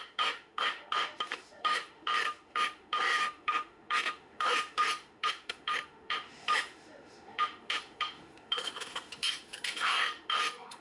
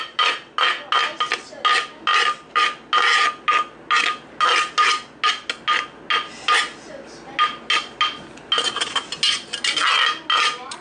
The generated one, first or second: first